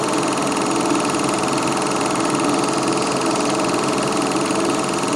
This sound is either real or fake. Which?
real